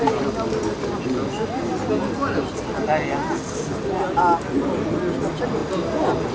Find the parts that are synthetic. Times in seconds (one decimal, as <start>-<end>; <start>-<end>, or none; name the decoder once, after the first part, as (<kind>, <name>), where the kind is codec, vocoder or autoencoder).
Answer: none